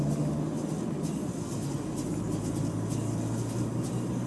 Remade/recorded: recorded